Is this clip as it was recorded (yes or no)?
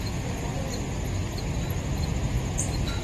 yes